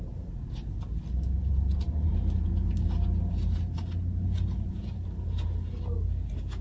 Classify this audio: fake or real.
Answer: real